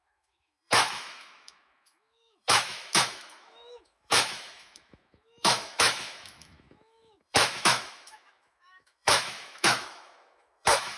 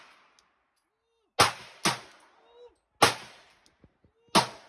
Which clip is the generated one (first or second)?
first